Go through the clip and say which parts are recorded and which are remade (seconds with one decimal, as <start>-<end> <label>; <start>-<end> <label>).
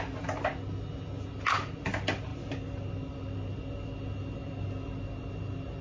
0.0-5.8 recorded